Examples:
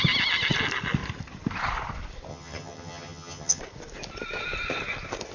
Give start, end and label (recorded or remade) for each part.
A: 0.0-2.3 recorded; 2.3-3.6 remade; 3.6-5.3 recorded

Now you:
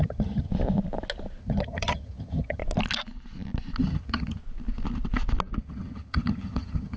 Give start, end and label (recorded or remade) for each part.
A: 0.0-0.5 remade; 0.5-1.4 recorded; 1.4-2.6 remade; 2.6-3.8 recorded; 3.8-4.4 remade; 4.4-5.6 recorded; 5.6-7.0 remade

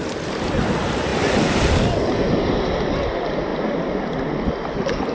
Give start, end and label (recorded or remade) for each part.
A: 0.0-5.1 recorded

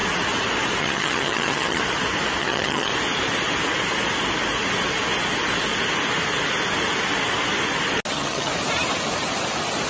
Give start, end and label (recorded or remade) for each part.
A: 0.0-0.8 recorded; 0.8-1.8 remade; 1.8-2.4 recorded; 2.4-2.9 remade; 2.9-8.1 recorded; 8.1-8.5 remade; 8.5-9.9 recorded